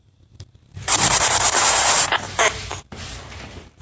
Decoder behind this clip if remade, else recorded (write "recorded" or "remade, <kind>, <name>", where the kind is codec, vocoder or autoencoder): remade, vocoder, BigVGAN v2